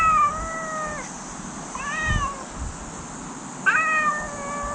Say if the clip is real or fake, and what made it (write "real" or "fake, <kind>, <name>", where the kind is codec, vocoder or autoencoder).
real